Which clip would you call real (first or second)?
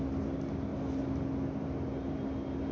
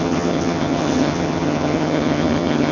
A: first